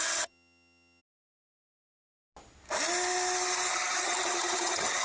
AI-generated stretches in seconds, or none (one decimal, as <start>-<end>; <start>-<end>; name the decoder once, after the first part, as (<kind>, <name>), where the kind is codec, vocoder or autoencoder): 0.0-1.0 (vocoder, HiFi-GAN); 3.7-5.0